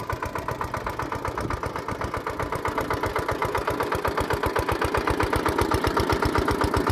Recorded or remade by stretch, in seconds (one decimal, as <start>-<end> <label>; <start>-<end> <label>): 0.0-6.9 recorded